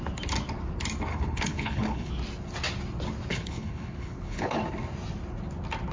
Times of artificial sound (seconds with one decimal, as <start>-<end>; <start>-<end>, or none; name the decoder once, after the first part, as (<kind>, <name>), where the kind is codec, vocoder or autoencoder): 1.1-2.1 (codec, HILCodec); 3.3-4.6